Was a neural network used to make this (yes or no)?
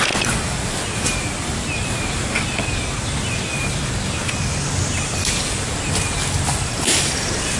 no